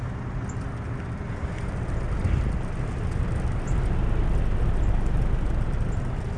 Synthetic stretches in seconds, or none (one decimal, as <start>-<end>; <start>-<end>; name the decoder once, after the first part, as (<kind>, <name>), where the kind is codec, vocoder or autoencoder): none